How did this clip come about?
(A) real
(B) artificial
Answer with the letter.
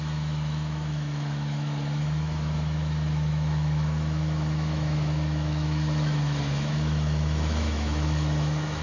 B